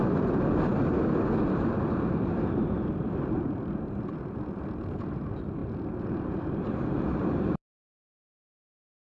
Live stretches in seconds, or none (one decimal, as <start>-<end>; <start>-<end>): 0.0-9.2